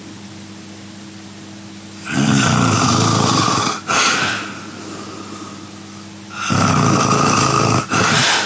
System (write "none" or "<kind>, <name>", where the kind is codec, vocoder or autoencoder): vocoder, BigVGAN v2